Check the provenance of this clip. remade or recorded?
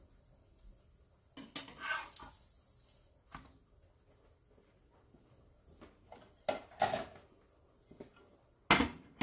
recorded